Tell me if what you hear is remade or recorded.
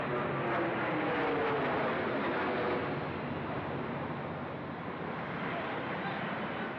recorded